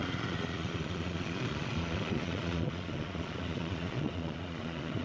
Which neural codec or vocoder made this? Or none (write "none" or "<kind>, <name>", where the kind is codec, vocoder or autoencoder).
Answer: vocoder, Vocos